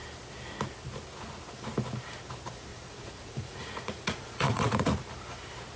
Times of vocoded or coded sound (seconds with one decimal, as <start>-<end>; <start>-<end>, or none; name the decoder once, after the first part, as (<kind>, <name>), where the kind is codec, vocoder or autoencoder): 2.7-4.9 (vocoder, Vocos)